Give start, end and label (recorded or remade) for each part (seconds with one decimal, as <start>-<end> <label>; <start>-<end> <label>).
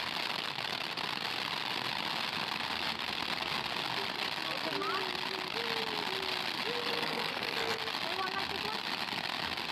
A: 0.0-6.8 recorded; 6.8-7.8 remade; 7.8-9.7 recorded